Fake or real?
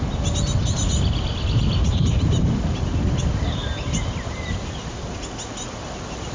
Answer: real